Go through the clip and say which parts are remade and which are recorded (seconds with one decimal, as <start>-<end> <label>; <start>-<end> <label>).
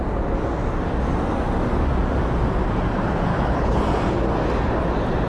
0.0-3.3 recorded; 3.3-3.8 remade; 3.8-5.3 recorded